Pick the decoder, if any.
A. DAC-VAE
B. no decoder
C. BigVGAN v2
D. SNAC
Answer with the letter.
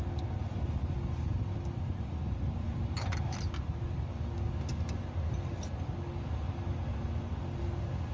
B